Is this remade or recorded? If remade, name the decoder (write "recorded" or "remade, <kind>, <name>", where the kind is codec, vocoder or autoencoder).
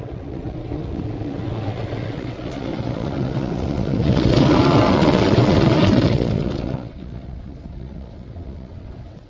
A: remade, vocoder, WaveNeXt